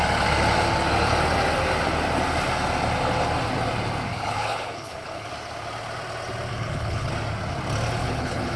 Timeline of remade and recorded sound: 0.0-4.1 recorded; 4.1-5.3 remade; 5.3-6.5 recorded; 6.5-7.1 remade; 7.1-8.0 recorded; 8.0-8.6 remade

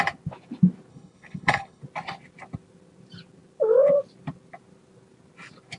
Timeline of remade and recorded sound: 0.0-0.9 recorded; 0.9-1.8 remade; 1.8-5.8 recorded

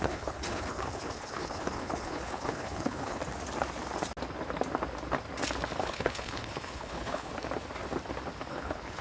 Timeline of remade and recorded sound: 0.0-3.2 remade; 3.2-5.8 recorded; 5.8-7.3 remade; 7.3-8.5 recorded; 8.5-9.0 remade

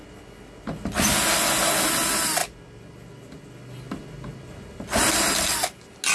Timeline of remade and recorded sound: 0.0-6.1 recorded

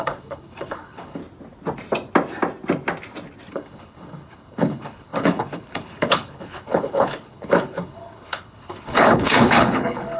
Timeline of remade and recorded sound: 0.0-1.2 remade; 1.2-3.5 recorded; 3.5-10.2 remade

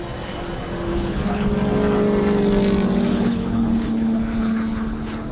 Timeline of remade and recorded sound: 0.0-0.9 recorded; 0.9-1.5 remade; 1.5-3.1 recorded; 3.1-5.3 remade

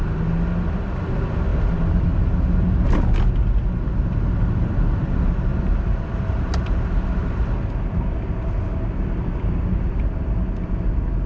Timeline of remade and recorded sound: 0.0-11.3 recorded